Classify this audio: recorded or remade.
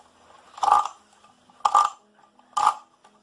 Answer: recorded